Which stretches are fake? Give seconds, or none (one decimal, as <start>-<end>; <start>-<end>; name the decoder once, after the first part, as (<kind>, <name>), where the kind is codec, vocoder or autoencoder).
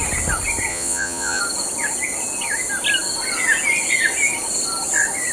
0.7-1.4 (vocoder, Vocos)